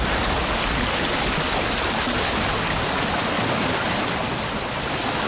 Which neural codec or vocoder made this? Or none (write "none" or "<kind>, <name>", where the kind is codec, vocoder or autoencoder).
none